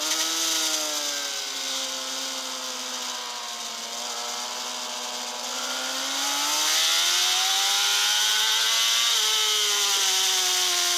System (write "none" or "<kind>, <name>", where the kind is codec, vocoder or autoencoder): none